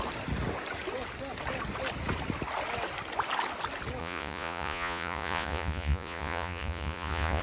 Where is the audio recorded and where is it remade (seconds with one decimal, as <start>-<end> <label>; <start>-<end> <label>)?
0.0-4.0 recorded; 4.0-7.4 remade